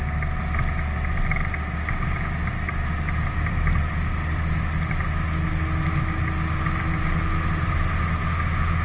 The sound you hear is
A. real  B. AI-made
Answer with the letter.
A